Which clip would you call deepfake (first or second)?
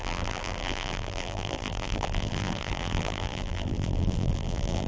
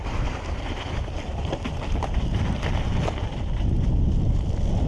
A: first